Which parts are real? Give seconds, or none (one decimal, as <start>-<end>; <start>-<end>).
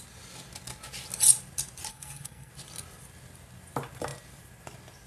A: 0.0-1.9; 2.5-5.1